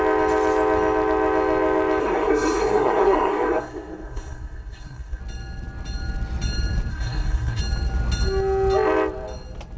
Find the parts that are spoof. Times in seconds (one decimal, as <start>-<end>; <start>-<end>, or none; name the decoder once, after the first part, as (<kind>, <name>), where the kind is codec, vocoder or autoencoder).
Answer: 2.0-5.2 (codec, SNAC); 6.9-7.6